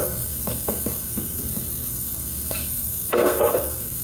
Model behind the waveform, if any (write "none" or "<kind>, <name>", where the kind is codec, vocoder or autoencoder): codec, SNAC